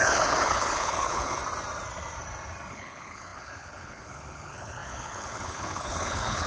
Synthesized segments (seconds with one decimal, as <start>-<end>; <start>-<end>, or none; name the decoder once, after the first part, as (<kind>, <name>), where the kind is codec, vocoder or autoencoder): 0.0-1.4 (codec, HILCodec); 2.7-6.5

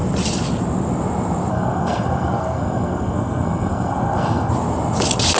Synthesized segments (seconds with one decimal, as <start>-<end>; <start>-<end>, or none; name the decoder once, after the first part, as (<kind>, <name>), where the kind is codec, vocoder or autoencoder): 1.5-4.5 (codec, SNAC)

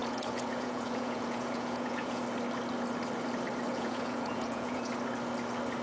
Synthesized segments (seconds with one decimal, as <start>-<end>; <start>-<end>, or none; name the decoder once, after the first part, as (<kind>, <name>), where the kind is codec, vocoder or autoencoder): 0.0-2.2 (vocoder, Vocos); 3.7-4.9

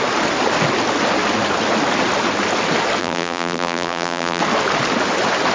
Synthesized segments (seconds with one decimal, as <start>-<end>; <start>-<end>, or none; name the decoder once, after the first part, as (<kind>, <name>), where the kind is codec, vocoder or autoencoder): 3.0-4.4 (vocoder, BigVGAN v2)

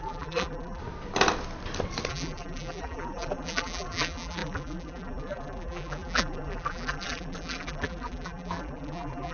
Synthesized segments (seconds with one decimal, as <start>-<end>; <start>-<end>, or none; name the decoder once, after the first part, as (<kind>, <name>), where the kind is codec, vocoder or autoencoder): 0.0-0.8 (vocoder, BigVGAN v2); 2.1-9.3

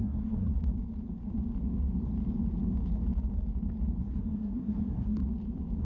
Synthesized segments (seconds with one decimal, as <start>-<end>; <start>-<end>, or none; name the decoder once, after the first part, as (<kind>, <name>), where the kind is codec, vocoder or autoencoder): 0.0-0.5 (codec, SNAC); 4.0-5.2

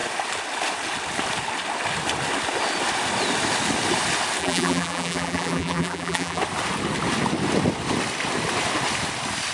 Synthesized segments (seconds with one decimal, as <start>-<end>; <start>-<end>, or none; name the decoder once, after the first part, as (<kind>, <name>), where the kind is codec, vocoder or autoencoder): 4.4-6.4 (vocoder, BigVGAN v2)

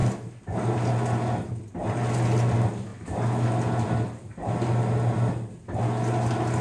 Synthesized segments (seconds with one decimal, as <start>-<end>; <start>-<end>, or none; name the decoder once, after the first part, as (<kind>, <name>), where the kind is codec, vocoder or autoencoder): 0.0-0.9 (vocoder, BigVGAN v2); 2.9-6.6